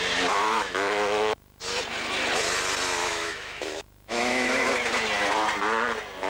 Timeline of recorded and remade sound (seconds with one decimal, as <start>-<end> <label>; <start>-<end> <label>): 0.0-0.4 recorded; 0.4-1.6 remade; 1.6-3.0 recorded; 3.0-4.7 remade; 4.7-6.3 recorded

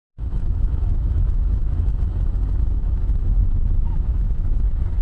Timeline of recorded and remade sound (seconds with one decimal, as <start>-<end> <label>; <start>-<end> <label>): 0.0-0.4 recorded; 0.4-1.9 remade; 1.9-2.5 recorded; 2.5-4.5 remade; 4.5-5.0 recorded

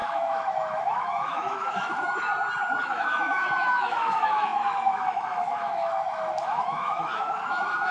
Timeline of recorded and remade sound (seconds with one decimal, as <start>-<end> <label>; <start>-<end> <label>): 0.0-2.3 remade; 2.3-2.8 recorded; 2.8-7.9 remade

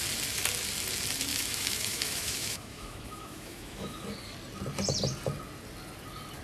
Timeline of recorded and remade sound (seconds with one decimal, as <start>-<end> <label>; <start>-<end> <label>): 0.0-1.3 recorded; 1.3-4.0 remade; 4.0-6.4 recorded